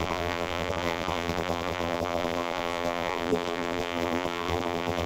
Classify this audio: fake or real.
fake